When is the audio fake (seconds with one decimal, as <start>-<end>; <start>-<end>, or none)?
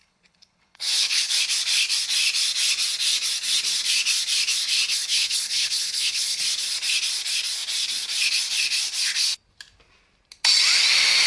0.0-1.3; 4.9-6.4